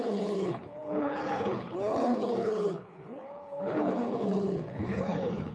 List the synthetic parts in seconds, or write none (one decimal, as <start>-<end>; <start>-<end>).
0.0-5.5